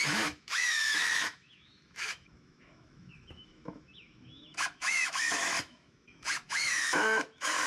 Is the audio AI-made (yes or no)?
yes